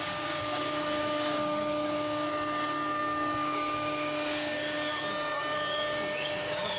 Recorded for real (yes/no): no